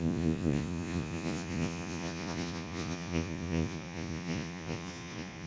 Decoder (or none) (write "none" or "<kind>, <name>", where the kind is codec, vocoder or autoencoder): vocoder, Vocos